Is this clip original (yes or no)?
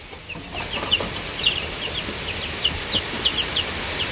no